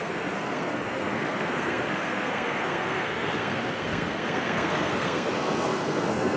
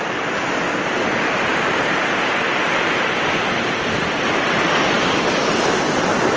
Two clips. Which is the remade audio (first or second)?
first